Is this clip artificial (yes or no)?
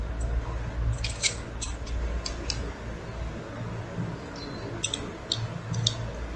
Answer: no